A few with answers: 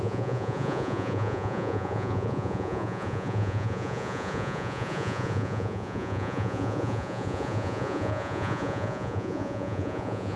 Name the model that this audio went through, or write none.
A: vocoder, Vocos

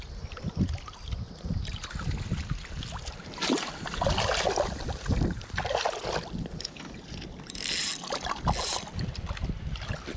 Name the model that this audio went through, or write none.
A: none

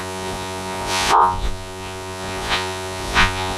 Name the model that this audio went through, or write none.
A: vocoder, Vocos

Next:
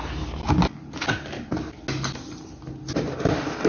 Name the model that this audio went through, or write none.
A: none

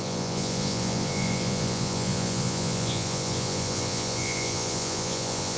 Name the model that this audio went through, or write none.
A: vocoder, Vocos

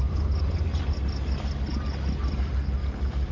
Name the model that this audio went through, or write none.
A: none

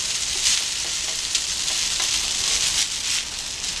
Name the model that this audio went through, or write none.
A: none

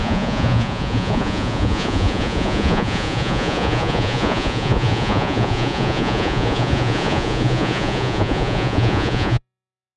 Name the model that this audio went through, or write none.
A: vocoder, Vocos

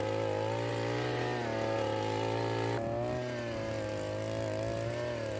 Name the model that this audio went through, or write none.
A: none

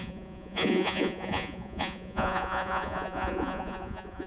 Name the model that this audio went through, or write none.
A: vocoder, Vocos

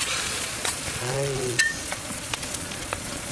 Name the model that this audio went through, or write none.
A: vocoder, Vocos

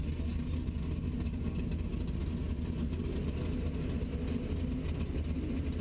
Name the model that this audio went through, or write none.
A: none